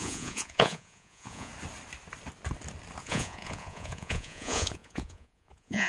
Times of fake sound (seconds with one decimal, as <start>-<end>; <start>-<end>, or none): 0.0-1.5; 3.0-5.9